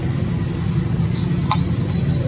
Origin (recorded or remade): recorded